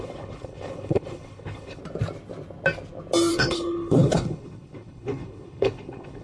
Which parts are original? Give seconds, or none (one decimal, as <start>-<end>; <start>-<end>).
1.8-3.3